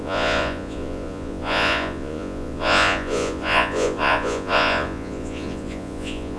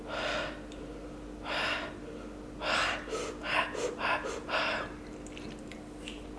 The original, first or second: second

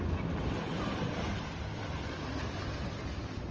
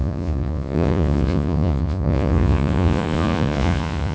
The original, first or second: first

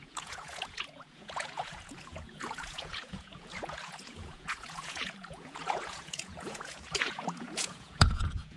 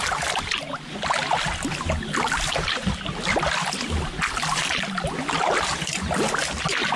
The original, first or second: second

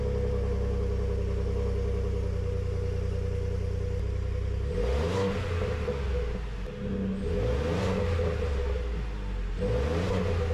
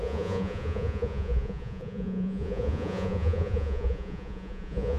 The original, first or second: first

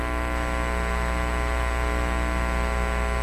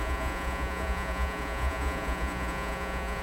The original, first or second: first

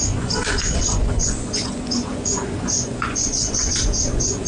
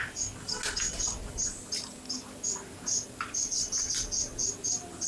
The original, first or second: second